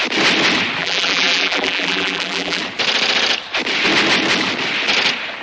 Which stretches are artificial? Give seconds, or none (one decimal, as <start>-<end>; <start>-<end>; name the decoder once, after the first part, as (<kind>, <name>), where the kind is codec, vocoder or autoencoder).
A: 0.8-2.6 (vocoder, BigVGAN v2)